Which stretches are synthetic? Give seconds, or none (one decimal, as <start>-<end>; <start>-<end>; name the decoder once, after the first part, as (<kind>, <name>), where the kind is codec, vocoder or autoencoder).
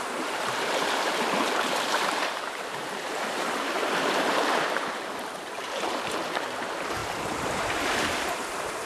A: 0.0-8.9 (vocoder, BigVGAN v2)